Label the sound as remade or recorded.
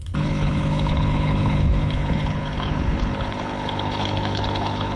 remade